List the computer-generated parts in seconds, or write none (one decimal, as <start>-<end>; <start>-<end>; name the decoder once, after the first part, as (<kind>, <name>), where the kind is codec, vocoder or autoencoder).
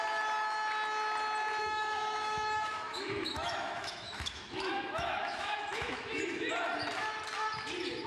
1.6-6.5 (autoencoder, DAC-VAE)